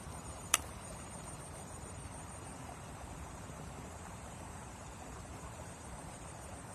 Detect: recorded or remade remade